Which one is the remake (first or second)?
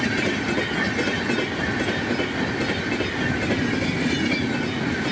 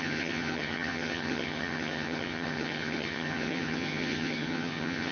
second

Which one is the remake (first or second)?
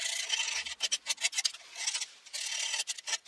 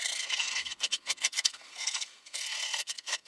second